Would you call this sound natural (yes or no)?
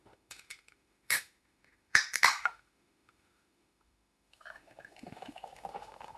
no